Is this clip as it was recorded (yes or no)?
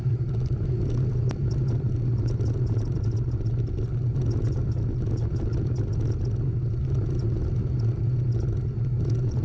yes